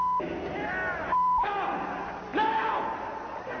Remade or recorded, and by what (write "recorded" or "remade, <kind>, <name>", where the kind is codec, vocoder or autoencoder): recorded